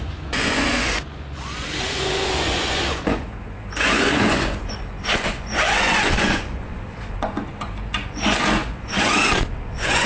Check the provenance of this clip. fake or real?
fake